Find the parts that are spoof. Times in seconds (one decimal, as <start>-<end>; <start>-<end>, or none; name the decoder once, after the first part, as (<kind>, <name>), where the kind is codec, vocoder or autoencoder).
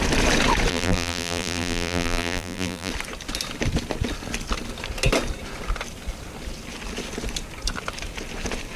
0.7-2.9 (vocoder, BigVGAN v2)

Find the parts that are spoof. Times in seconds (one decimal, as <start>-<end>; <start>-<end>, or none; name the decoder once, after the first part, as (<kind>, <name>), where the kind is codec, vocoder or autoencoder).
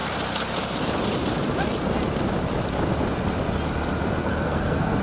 4.2-5.0 (codec, SNAC)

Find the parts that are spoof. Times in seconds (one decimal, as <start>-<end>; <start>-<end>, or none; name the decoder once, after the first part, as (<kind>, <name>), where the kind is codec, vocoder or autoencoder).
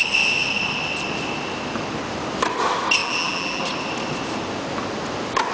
3.0-3.6 (vocoder, BigVGAN v2)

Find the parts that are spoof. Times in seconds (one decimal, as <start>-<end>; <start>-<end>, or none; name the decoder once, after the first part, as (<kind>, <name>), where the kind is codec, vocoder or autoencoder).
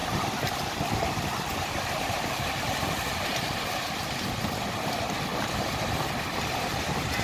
0.0-4.3 (vocoder, BigVGAN v2); 5.3-5.9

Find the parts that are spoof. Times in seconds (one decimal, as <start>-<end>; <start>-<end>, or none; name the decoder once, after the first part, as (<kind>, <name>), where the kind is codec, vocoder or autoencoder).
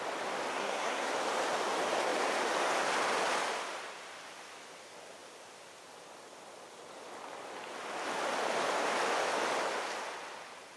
0.5-1.1 (codec, SNAC)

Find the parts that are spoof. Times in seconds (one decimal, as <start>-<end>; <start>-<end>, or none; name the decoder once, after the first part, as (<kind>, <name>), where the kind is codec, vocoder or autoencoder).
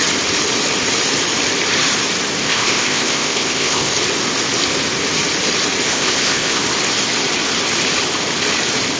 2.4-3.9 (codec, ZipCodec); 5.9-6.6